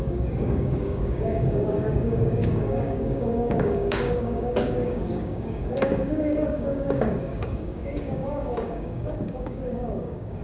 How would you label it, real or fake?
fake